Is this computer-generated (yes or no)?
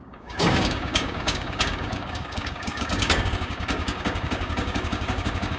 yes